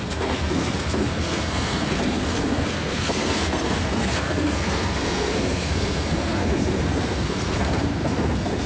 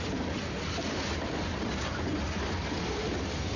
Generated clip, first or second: first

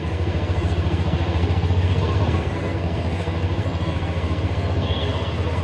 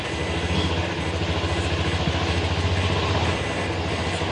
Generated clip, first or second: first